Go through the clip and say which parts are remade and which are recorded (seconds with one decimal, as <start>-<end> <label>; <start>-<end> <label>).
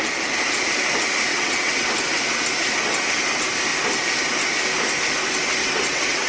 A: 0.0-1.3 recorded; 1.3-1.9 remade; 1.9-5.6 recorded; 5.6-6.3 remade